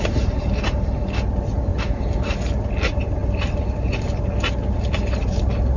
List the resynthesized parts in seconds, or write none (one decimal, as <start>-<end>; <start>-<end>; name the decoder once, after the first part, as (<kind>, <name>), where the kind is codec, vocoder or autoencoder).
1.7-2.7 (vocoder, BigVGAN v2)